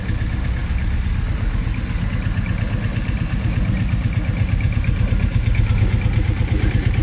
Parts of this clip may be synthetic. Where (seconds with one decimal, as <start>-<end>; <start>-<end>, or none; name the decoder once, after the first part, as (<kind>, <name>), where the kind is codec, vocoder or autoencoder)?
none